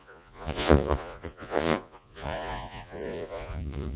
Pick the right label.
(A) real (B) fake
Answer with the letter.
B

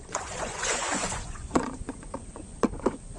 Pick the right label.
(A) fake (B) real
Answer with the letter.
A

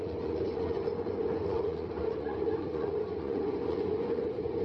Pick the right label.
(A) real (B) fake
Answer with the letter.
B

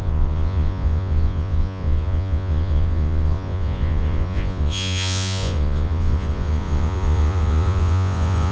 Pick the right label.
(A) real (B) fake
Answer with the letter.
B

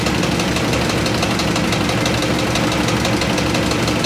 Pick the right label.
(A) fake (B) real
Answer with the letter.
B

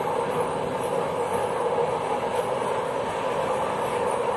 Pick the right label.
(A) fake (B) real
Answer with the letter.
B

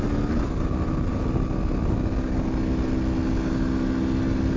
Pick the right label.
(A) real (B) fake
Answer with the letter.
A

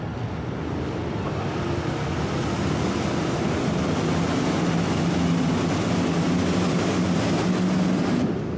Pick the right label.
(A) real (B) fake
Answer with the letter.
A